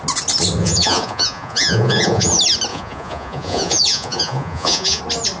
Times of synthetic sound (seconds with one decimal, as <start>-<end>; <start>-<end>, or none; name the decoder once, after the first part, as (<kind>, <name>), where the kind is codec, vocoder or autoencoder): 0.6-2.3 (vocoder, Vocos); 2.7-5.0